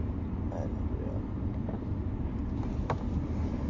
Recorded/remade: recorded